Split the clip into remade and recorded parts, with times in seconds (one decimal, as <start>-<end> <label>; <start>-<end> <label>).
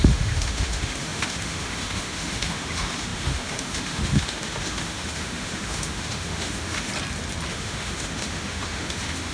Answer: 0.0-6.9 remade; 6.9-7.5 recorded; 7.5-9.3 remade